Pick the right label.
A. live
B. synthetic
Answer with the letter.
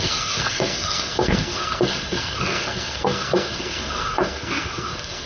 B